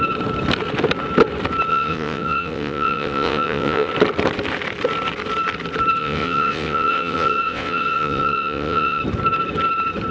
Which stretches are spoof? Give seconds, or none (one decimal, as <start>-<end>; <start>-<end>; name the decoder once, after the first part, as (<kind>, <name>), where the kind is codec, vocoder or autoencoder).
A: 1.7-3.9 (vocoder, WaveNeXt); 6.0-9.0

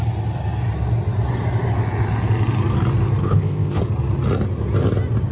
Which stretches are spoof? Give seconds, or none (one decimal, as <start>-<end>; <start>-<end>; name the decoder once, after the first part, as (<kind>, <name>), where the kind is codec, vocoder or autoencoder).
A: 3.2-3.8 (codec, ZipCodec)